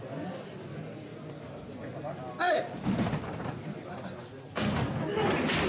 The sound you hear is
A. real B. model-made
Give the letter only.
A